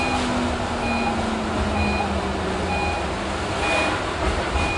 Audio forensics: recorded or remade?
recorded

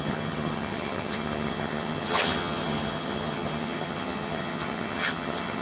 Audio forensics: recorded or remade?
remade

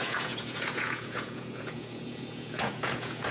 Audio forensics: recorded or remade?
remade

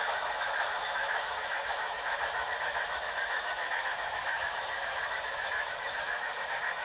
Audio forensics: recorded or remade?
remade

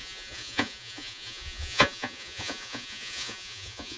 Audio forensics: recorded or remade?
remade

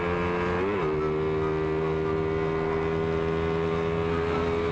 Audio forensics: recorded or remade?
recorded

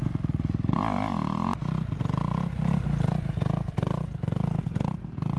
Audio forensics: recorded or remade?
recorded